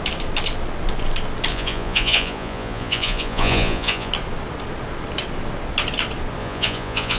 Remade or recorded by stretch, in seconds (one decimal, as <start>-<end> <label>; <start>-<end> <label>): 0.0-1.5 recorded; 1.5-4.1 remade; 4.1-6.4 recorded; 6.4-7.2 remade